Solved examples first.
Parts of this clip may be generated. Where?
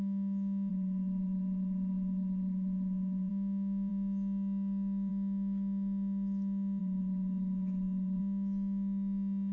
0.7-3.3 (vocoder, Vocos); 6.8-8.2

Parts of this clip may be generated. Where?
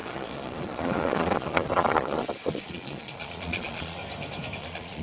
0.0-4.0 (vocoder, Vocos); 4.6-5.0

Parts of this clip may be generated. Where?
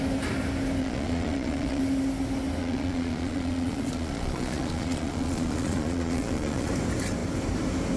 0.8-1.8 (vocoder, Vocos); 2.6-6.7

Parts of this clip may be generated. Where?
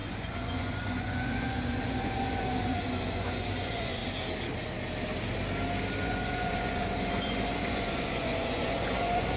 0.0-4.0 (vocoder, Vocos); 6.0-9.4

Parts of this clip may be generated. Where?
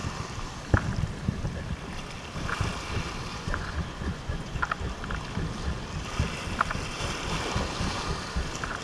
3.3-4.6 (vocoder, Vocos)